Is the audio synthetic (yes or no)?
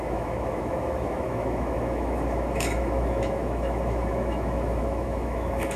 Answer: yes